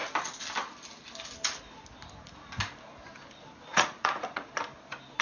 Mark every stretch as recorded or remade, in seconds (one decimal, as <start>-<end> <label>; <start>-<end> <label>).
0.0-3.7 recorded; 3.7-4.5 remade; 4.5-5.2 recorded